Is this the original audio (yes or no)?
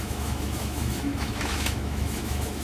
no